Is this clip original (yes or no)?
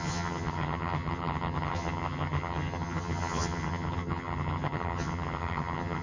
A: no